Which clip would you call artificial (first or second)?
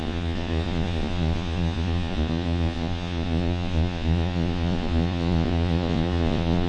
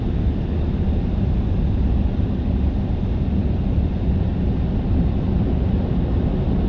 first